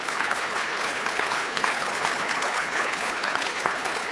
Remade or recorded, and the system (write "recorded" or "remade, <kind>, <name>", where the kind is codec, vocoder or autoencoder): remade, codec, HILCodec